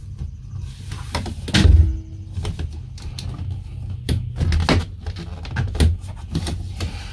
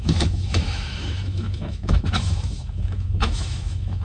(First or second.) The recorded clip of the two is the first